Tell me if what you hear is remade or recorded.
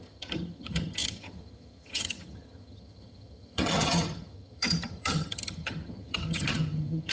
remade